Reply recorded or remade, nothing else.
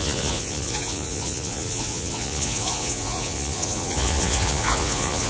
remade